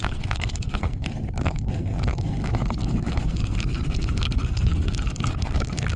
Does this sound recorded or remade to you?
remade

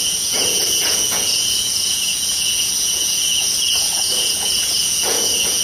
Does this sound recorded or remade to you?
remade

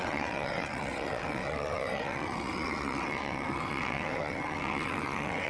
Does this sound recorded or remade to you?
remade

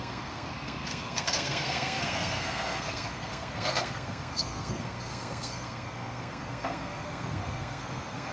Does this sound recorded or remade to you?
remade